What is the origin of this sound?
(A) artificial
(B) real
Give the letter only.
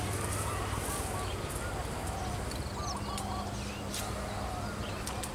B